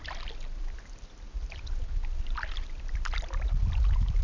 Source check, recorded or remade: remade